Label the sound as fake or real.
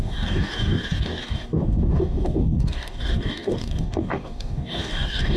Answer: fake